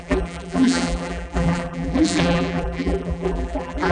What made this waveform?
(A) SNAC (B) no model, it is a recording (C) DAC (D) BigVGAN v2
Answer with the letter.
D